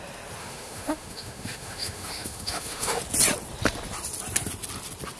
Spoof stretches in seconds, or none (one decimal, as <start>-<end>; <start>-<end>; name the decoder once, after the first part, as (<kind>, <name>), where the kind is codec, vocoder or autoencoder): 0.4-3.0 (autoencoder, DAC-VAE)